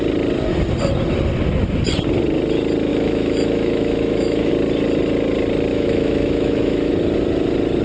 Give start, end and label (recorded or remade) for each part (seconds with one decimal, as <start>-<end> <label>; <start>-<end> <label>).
0.0-2.9 recorded; 2.9-4.5 remade; 4.5-5.7 recorded; 5.7-6.9 remade; 6.9-7.8 recorded